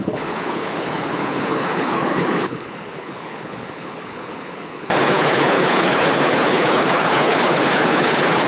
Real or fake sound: fake